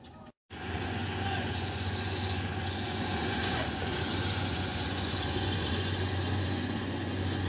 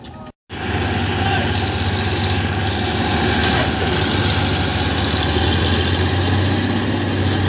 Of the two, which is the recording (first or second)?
second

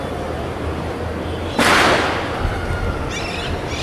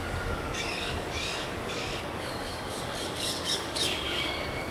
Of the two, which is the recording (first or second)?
first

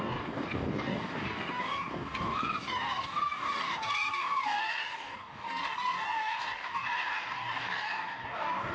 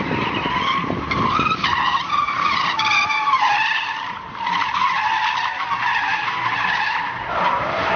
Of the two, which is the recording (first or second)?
second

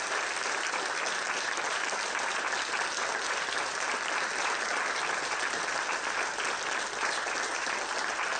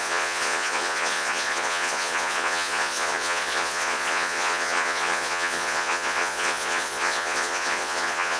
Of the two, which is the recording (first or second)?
first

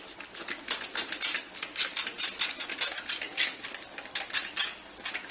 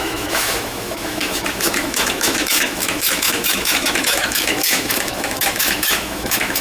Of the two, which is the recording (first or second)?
first